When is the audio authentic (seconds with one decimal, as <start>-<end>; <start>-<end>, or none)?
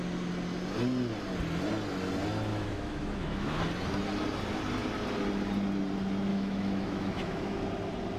0.0-2.5; 3.6-6.3; 7.6-8.2